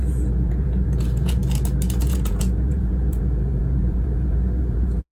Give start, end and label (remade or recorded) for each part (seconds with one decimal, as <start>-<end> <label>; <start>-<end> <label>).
0.0-1.4 remade; 1.4-2.0 recorded; 2.0-5.1 remade